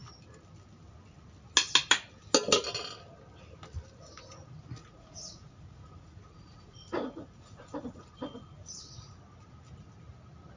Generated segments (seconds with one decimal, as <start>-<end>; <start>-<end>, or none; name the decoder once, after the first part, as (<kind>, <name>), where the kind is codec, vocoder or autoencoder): 4.8-9.2 (vocoder, Vocos)